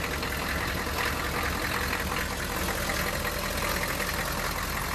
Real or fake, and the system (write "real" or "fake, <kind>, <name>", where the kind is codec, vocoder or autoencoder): real